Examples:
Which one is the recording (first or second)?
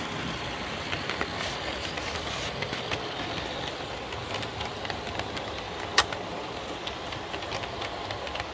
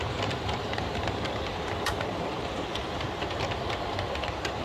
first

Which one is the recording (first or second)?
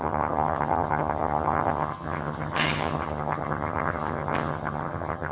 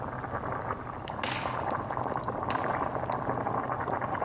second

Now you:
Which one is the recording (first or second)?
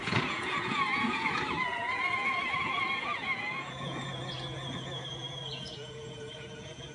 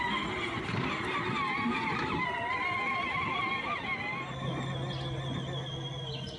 second